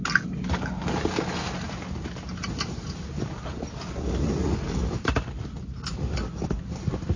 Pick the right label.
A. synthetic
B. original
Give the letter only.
B